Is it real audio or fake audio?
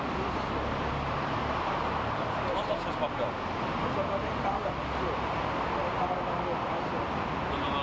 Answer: real